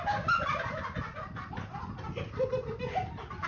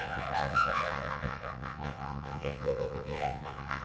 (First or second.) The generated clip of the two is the second